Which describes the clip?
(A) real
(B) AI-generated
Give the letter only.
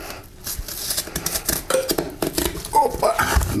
B